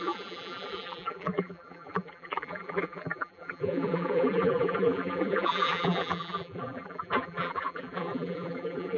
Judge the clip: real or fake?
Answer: fake